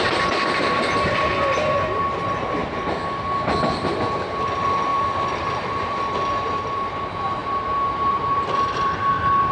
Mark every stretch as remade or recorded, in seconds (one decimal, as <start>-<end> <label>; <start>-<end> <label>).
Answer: 0.0-2.6 recorded; 2.6-3.2 remade; 3.2-4.9 recorded; 4.9-6.9 remade; 6.9-7.4 recorded; 7.4-9.1 remade; 9.1-9.5 recorded